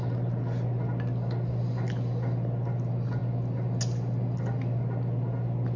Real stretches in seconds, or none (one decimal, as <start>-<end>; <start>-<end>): 0.0-5.8